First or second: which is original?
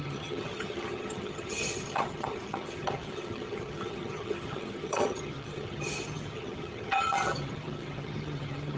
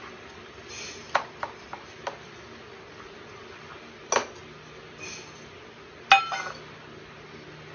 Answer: second